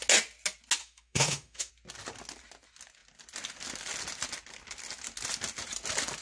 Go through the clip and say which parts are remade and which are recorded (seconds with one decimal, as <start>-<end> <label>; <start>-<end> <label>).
0.0-0.8 recorded; 0.8-1.7 remade; 1.7-6.2 recorded